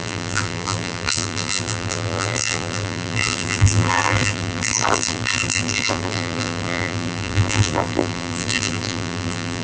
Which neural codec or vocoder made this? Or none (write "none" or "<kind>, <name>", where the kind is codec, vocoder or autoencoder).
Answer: vocoder, BigVGAN v2